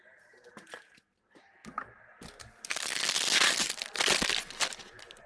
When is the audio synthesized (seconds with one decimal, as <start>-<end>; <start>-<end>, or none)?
none

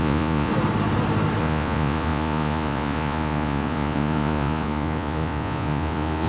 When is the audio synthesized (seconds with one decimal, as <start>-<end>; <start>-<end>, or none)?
0.0-0.5; 1.4-6.3

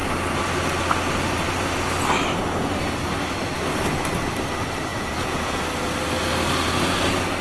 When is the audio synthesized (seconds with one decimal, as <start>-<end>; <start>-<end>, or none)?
4.9-5.6

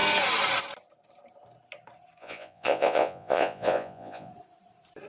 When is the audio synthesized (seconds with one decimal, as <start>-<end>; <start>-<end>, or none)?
2.2-4.3